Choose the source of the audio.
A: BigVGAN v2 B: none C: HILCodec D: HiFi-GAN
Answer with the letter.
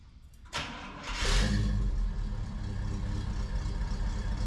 A